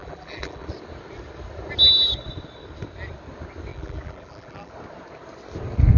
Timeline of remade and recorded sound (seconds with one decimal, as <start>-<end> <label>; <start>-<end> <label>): 0.0-0.7 remade; 0.7-3.7 recorded; 3.7-4.7 remade; 4.7-6.0 recorded